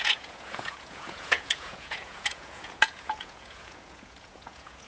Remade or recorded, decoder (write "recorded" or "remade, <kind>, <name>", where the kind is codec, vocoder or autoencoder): remade, vocoder, Vocos